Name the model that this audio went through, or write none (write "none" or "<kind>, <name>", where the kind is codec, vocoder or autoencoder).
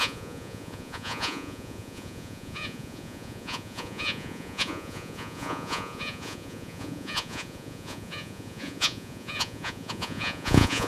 vocoder, Vocos